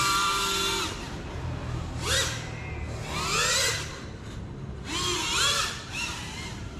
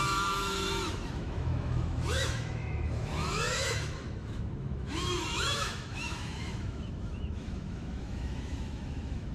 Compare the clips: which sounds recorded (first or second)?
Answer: first